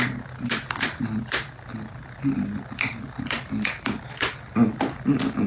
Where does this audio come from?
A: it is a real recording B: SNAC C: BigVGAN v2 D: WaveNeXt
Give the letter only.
A